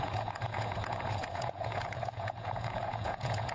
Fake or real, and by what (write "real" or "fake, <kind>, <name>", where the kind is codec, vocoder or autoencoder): fake, vocoder, Vocos